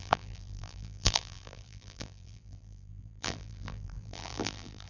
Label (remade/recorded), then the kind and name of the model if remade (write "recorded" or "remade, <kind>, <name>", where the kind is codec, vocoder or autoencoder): remade, vocoder, BigVGAN v2